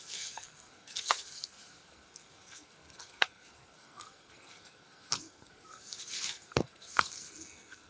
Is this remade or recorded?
remade